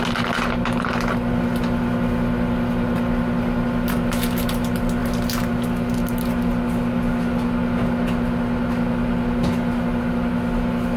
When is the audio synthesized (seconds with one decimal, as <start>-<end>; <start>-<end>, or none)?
none